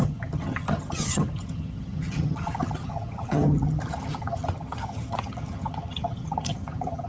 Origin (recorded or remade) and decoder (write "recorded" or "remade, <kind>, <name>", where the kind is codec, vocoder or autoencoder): remade, vocoder, HiFi-GAN